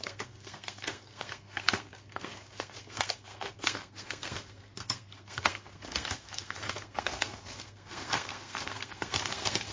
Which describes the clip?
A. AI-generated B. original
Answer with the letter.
A